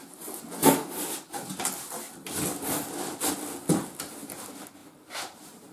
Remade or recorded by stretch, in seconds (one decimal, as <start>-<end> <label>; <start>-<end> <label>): 0.0-4.8 recorded; 4.8-5.7 remade